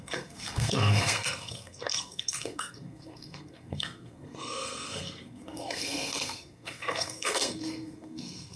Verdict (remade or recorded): remade